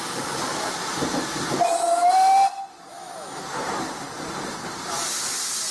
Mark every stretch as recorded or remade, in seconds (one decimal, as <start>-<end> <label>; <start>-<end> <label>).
0.0-2.9 recorded; 2.9-3.4 remade; 3.4-5.7 recorded